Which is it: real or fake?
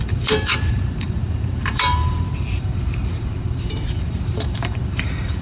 fake